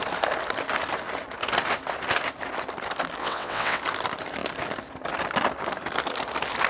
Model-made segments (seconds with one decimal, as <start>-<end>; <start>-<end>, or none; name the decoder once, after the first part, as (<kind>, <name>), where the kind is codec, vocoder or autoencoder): 3.2-3.8 (vocoder, WaveNeXt)